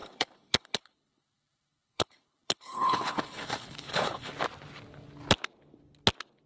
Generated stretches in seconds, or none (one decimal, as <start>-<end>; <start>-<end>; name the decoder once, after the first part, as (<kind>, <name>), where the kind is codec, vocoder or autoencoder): 0.0-4.3 (codec, HILCodec)